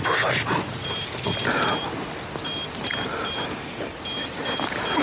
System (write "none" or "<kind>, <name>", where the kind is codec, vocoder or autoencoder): none